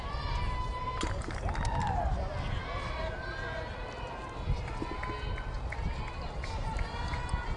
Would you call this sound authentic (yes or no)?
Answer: yes